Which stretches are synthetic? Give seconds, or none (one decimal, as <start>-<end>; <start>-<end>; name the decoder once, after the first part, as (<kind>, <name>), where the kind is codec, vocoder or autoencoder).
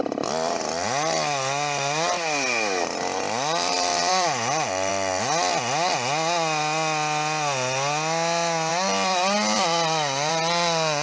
0.0-4.9 (vocoder, BigVGAN v2); 8.7-10.3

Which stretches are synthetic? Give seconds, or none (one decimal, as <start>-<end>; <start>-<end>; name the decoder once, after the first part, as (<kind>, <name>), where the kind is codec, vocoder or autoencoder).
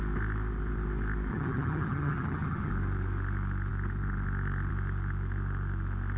1.3-2.7 (vocoder, HiFi-GAN)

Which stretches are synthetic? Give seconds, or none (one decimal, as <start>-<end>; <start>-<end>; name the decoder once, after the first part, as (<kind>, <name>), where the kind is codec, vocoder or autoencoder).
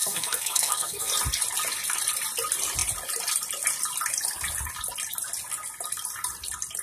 0.0-1.1 (codec, SNAC)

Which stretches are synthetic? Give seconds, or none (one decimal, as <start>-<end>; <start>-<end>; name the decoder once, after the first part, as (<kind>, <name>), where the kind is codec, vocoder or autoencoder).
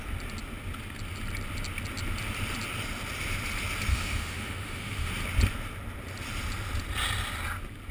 3.9-5.1 (autoencoder, DAC-VAE)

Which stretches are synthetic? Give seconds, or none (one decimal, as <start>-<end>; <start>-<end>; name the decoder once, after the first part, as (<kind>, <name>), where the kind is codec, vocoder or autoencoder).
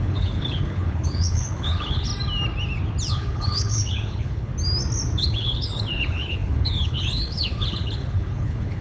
0.0-2.1 (codec, HILCodec); 3.1-4.5; 5.2-8.8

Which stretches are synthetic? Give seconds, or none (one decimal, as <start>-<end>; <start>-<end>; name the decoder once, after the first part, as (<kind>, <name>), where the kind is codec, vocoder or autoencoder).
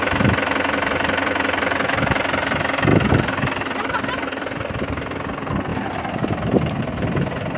none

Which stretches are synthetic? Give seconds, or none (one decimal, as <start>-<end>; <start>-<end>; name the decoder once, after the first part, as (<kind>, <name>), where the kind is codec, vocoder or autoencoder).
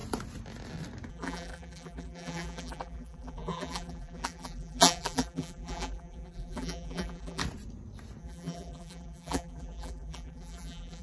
1.1-7.4 (vocoder, BigVGAN v2); 8.2-11.0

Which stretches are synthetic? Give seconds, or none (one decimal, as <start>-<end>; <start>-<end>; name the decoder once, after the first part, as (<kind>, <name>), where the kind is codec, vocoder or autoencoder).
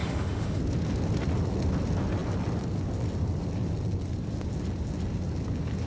0.0-0.6 (autoencoder, DAC-VAE)